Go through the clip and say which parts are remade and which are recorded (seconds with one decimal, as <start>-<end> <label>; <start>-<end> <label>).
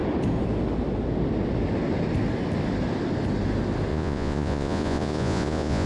0.0-3.9 recorded; 3.9-5.9 remade